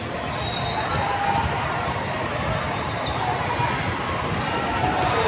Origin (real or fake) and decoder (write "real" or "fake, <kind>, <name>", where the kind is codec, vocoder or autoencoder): real